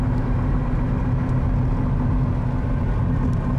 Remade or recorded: recorded